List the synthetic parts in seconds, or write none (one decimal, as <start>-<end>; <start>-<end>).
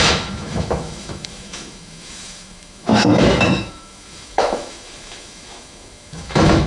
0.0-6.7